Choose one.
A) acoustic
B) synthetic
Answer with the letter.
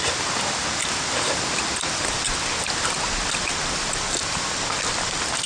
A